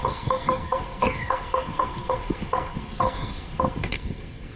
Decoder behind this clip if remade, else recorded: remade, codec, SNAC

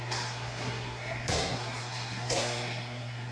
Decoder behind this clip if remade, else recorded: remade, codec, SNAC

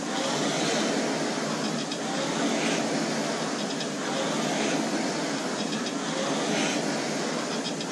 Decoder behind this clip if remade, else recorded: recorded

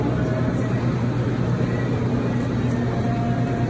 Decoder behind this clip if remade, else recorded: recorded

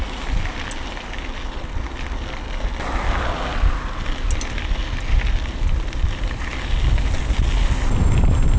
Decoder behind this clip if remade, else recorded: recorded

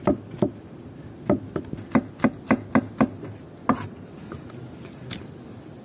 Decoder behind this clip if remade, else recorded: recorded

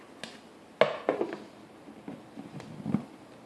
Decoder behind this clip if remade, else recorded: recorded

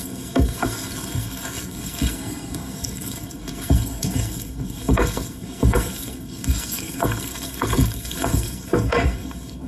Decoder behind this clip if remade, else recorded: remade, codec, SNAC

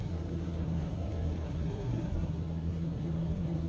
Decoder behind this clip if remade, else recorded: remade, codec, SNAC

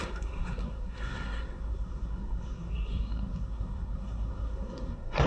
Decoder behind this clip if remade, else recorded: remade, codec, SNAC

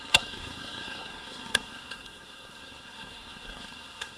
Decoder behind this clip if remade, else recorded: remade, codec, SNAC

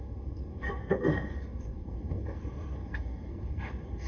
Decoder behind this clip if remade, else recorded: remade, codec, SNAC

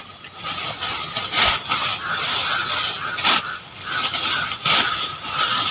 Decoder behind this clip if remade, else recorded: recorded